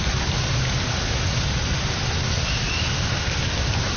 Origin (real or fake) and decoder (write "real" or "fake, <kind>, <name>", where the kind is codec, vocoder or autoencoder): real